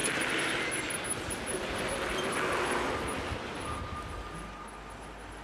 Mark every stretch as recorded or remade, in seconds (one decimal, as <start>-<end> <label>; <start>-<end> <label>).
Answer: 0.0-5.4 recorded